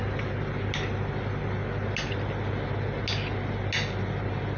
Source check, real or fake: real